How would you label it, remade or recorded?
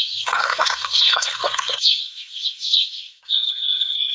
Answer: remade